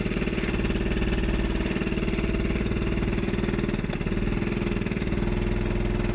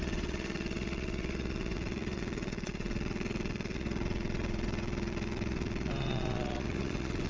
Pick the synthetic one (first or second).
second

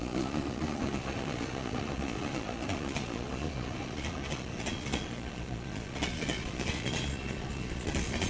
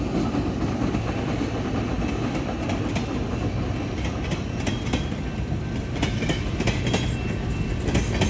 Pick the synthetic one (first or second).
first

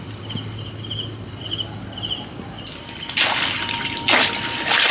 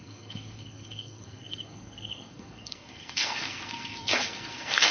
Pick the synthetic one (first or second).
second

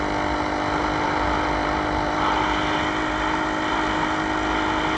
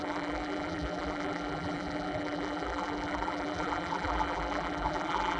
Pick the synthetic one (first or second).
second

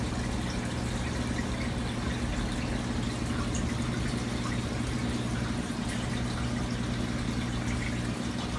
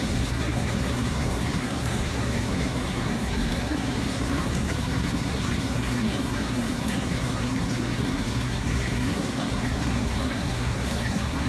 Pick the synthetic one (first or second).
second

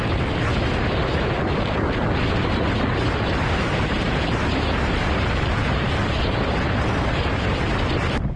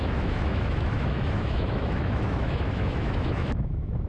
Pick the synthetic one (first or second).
second